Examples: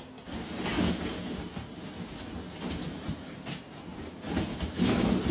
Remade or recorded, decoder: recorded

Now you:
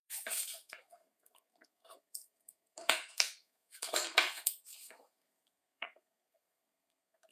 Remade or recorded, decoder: remade, codec, SNAC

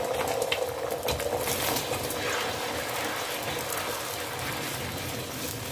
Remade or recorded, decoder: recorded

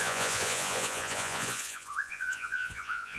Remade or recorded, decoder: remade, vocoder, Vocos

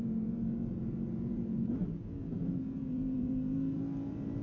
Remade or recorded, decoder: remade, vocoder, BigVGAN v2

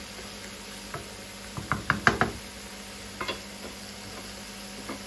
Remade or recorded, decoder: recorded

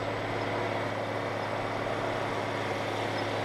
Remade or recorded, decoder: recorded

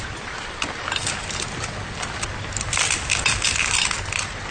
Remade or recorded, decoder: recorded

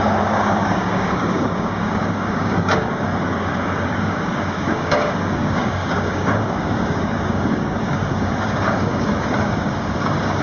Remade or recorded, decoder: remade, codec, DAC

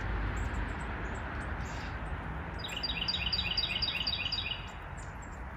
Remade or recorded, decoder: recorded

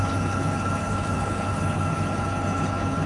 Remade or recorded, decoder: remade, codec, HILCodec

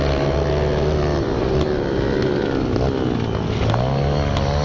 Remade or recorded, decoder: recorded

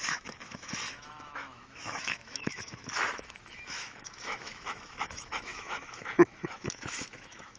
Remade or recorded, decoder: remade, autoencoder, DAC-VAE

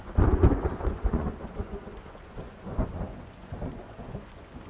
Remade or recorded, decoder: remade, vocoder, Vocos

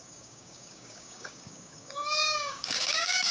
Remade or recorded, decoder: remade, codec, DAC